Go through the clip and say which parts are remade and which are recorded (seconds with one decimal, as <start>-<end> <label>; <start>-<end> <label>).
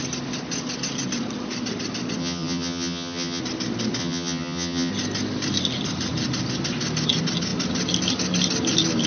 0.0-2.2 recorded; 2.2-3.4 remade; 3.4-4.0 recorded; 4.0-4.9 remade; 4.9-9.1 recorded